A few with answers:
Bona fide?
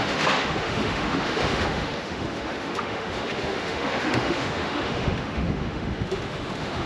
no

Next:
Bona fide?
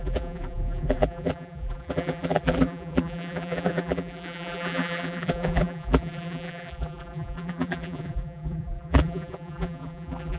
no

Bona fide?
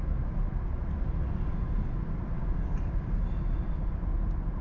yes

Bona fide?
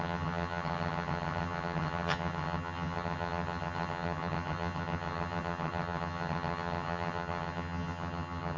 no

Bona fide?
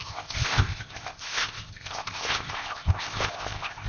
no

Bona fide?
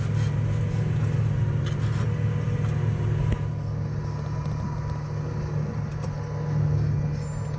yes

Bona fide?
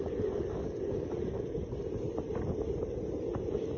yes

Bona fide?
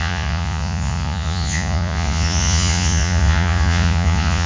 no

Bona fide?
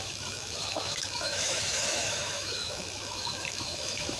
no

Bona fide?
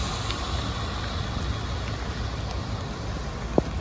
yes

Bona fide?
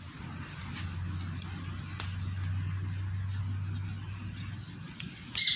yes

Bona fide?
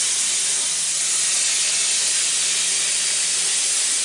yes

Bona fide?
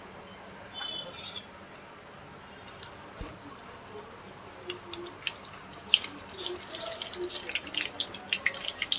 yes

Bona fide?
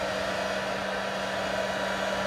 yes